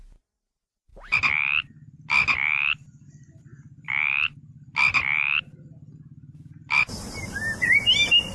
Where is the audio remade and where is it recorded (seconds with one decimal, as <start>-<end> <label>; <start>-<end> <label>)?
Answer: 0.0-8.3 recorded